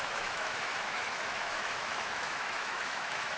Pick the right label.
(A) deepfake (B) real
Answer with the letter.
A